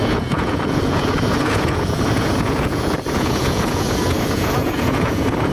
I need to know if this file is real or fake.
fake